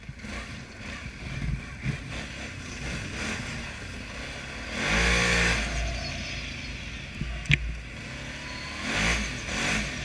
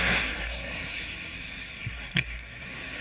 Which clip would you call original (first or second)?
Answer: first